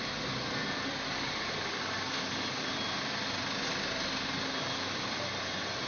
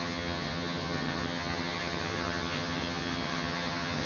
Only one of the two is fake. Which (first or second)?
second